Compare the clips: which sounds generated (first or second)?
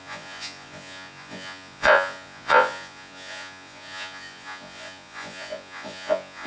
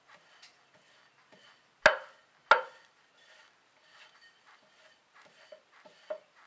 first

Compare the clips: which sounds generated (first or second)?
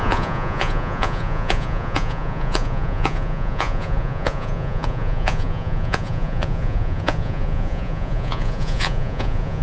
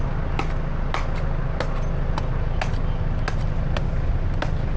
first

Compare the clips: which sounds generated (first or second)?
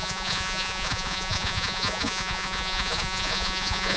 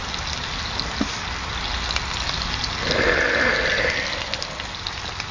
first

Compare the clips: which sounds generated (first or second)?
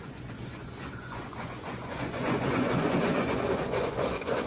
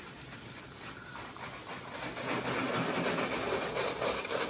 first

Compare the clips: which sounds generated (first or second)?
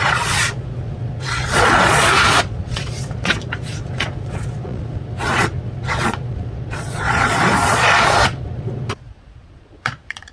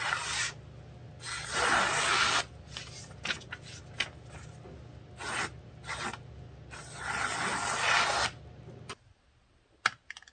first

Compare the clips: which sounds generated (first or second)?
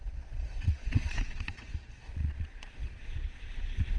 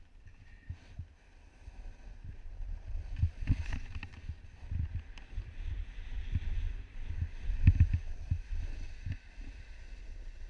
first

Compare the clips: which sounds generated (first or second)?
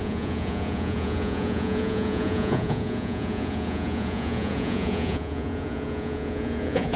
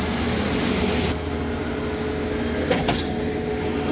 first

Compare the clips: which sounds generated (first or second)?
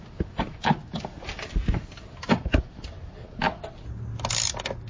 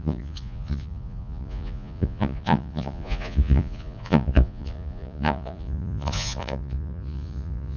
second